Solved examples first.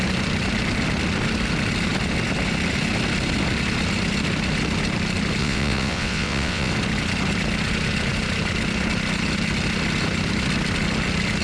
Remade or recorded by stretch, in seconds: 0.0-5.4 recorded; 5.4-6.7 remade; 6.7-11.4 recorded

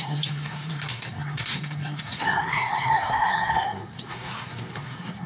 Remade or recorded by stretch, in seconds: 0.0-5.3 remade

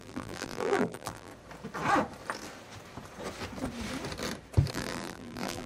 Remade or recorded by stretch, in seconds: 0.0-1.3 remade; 1.3-4.7 recorded; 4.7-5.7 remade

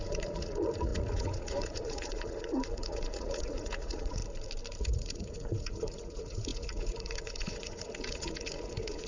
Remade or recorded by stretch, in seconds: 0.0-4.2 remade; 4.2-4.8 recorded; 4.8-9.1 remade

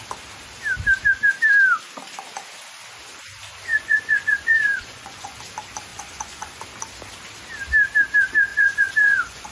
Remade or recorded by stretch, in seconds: 0.0-3.7 recorded; 3.7-5.4 remade; 5.4-5.9 recorded; 5.9-6.6 remade; 6.6-8.5 recorded; 8.5-9.5 remade

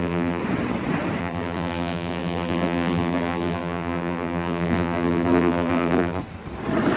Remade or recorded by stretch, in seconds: 0.0-0.4 remade; 0.4-1.2 recorded; 1.2-6.2 remade; 6.2-7.0 recorded

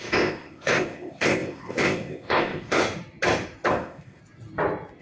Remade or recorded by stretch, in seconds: 0.0-2.8 remade; 2.8-3.7 recorded; 3.7-4.2 remade; 4.2-5.0 recorded

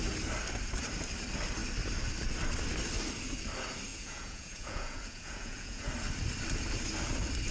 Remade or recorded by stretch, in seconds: 0.0-3.9 recorded; 3.9-5.9 remade; 5.9-7.5 recorded